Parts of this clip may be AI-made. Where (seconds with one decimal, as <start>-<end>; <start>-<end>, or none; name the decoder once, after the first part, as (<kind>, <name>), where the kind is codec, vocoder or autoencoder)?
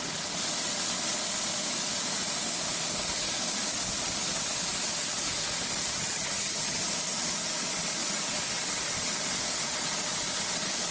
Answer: 6.0-6.8 (vocoder, HiFi-GAN)